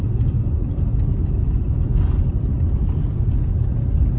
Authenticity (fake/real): real